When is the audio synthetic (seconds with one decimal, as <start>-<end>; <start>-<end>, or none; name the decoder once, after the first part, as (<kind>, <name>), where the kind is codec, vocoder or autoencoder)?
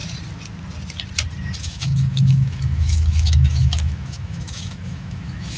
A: 1.6-5.6 (autoencoder, DAC-VAE)